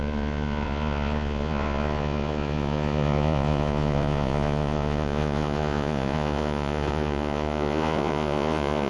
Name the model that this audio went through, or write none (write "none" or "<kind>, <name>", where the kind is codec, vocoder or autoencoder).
vocoder, Vocos